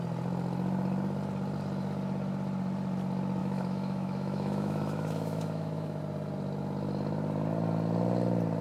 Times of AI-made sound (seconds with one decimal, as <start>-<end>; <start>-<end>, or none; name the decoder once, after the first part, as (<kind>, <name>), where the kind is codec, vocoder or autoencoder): 3.4-6.0 (autoencoder, DAC-VAE)